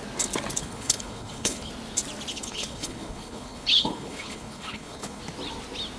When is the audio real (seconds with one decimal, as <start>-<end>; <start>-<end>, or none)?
0.0-0.6; 1.7-2.3; 5.2-6.0